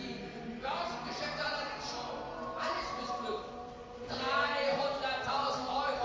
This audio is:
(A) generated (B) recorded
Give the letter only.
B